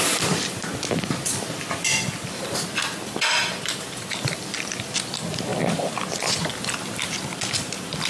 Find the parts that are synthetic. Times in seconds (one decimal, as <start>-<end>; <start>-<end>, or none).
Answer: 0.0-5.5; 6.5-8.1